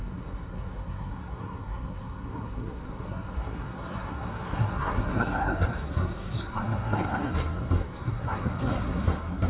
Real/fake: fake